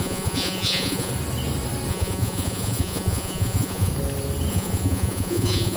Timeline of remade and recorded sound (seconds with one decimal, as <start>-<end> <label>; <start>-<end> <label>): 0.0-1.1 remade; 1.1-1.9 recorded; 1.9-3.9 remade; 3.9-4.5 recorded; 4.5-5.8 remade